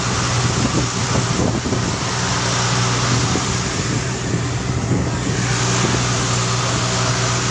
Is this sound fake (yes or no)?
no